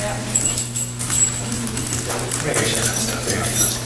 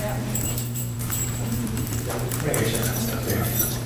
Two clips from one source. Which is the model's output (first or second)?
second